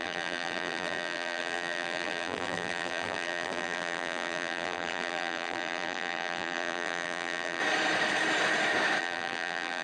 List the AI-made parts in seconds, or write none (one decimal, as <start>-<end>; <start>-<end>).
0.0-7.6; 9.0-9.8